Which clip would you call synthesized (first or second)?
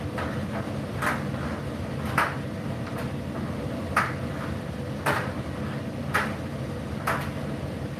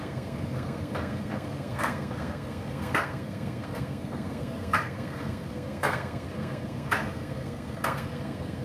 second